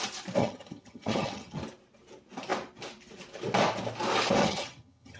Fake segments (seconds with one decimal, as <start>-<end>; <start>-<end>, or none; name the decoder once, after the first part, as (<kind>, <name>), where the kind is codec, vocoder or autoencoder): 0.4-1.6 (vocoder, HiFi-GAN); 4.4-5.2